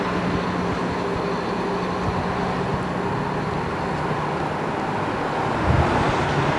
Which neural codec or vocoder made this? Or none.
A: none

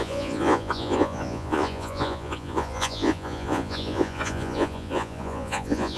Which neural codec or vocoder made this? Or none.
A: vocoder, Vocos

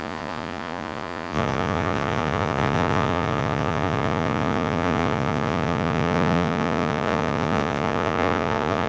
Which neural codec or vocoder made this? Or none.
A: vocoder, Vocos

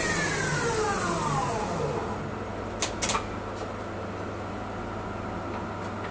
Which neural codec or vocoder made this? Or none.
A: none